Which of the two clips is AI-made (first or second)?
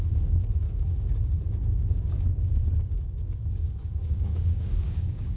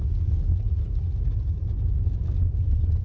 first